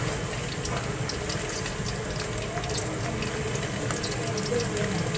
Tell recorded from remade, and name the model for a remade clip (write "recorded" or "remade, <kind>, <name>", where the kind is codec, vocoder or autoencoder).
recorded